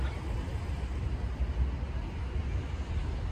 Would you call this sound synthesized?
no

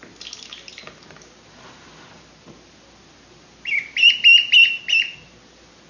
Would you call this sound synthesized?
no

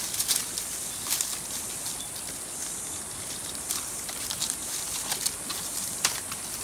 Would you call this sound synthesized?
no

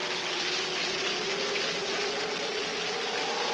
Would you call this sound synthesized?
no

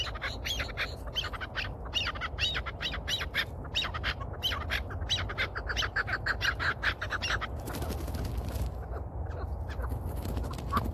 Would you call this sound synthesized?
no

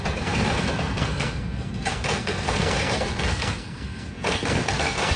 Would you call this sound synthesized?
yes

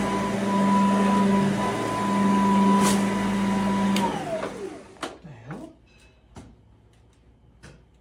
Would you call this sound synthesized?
no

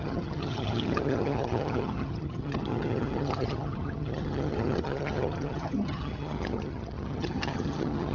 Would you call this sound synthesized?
yes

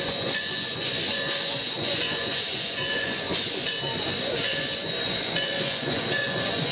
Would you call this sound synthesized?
yes